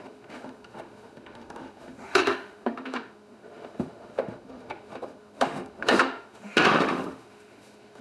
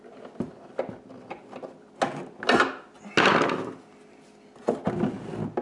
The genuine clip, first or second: second